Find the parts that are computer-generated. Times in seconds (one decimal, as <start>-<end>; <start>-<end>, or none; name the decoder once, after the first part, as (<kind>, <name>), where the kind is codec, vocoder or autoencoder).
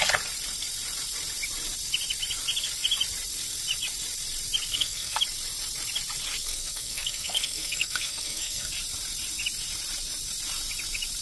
4.7-5.2 (codec, SNAC); 6.4-8.7